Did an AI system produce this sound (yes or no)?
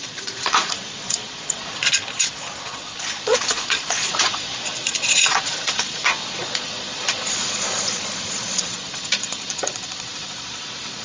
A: yes